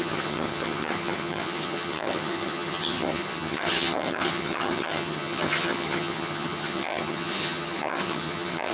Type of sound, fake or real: fake